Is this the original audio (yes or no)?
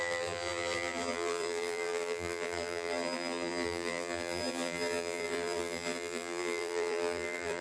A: no